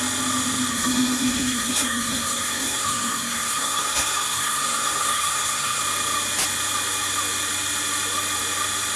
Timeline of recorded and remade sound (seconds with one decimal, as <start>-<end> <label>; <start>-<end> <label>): 0.0-0.7 recorded; 0.7-5.8 remade; 5.8-9.0 recorded